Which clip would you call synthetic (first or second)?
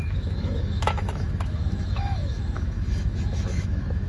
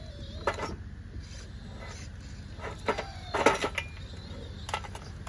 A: first